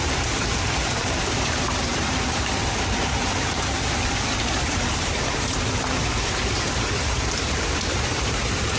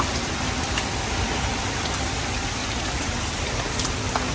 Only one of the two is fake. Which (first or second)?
first